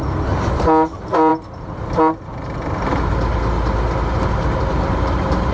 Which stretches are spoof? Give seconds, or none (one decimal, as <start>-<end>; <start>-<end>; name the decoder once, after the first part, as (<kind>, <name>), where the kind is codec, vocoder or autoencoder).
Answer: none